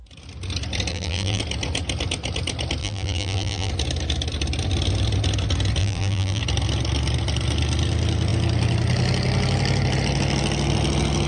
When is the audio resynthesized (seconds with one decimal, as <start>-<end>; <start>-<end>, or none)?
0.9-1.4; 2.8-3.7; 5.8-6.4